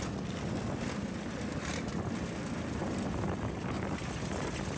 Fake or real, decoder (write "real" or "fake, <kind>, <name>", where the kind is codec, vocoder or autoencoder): real